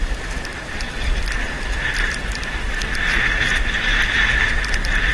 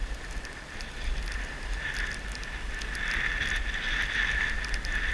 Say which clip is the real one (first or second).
second